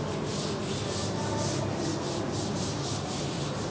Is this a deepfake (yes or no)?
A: no